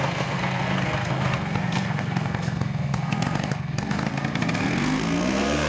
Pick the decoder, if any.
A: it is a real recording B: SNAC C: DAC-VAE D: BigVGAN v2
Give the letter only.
B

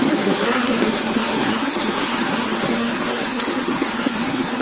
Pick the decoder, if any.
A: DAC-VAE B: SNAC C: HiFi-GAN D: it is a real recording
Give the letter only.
B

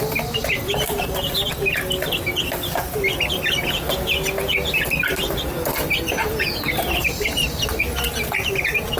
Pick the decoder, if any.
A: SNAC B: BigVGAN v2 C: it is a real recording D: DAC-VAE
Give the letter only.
C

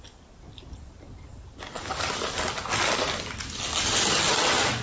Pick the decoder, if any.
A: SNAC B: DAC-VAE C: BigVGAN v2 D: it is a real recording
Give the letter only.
D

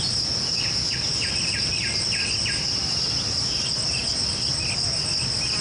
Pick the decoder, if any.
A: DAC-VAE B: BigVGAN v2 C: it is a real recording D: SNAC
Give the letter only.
C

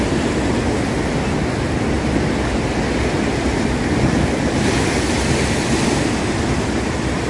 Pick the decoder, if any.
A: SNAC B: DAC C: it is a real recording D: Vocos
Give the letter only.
C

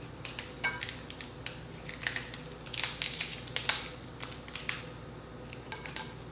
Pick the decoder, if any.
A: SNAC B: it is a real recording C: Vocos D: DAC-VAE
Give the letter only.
B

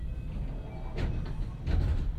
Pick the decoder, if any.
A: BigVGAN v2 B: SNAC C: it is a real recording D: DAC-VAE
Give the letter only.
C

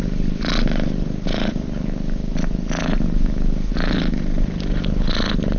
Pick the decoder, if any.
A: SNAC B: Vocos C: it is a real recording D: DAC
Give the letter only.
C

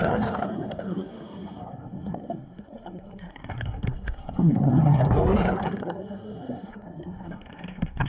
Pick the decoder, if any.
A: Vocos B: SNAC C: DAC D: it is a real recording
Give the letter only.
B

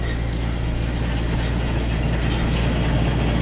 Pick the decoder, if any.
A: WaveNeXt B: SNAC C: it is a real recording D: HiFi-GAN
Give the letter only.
C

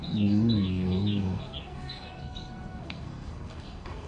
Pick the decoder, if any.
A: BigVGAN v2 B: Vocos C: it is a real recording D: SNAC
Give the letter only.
D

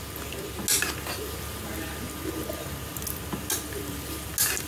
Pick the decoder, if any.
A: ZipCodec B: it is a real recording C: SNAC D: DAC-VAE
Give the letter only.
B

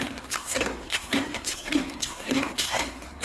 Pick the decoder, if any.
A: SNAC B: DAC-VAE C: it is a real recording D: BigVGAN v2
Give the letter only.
A